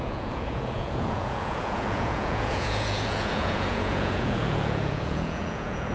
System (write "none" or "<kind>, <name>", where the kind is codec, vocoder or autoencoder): vocoder, Vocos